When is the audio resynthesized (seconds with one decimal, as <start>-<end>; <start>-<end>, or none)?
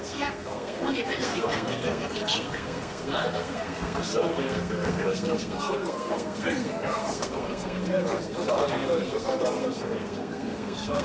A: 0.0-11.0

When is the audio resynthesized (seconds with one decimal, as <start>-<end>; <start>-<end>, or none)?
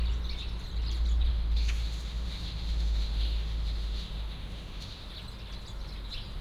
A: 1.3-5.1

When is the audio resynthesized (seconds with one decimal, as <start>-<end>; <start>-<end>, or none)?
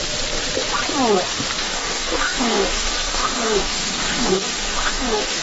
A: 1.6-5.4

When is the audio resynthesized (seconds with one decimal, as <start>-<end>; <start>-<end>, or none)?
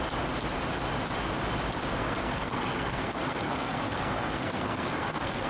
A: 1.9-5.5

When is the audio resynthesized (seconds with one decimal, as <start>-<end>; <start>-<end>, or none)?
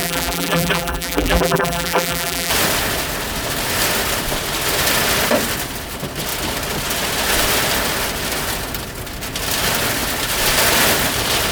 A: 0.0-2.5